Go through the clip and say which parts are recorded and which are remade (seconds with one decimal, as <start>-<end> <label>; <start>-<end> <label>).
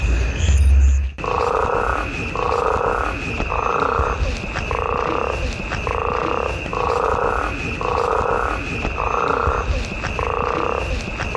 0.0-11.4 recorded